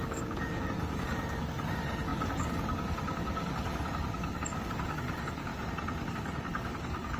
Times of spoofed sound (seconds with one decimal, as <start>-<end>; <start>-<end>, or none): 0.0-5.5; 6.1-7.2